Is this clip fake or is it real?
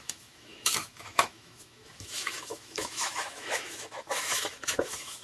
fake